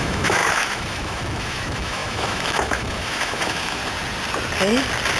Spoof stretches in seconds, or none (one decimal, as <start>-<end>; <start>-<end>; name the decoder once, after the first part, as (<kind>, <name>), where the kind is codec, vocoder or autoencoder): 0.0-3.8 (autoencoder, DAC-VAE)